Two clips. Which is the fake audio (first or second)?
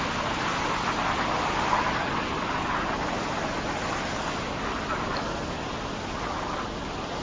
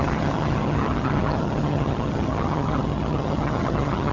second